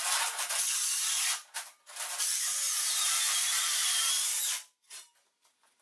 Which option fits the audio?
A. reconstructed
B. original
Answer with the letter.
A